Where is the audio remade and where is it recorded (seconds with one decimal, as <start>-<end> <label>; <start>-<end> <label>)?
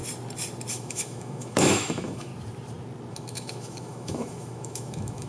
0.0-0.7 recorded; 0.7-2.3 remade; 2.3-3.1 recorded; 3.1-5.3 remade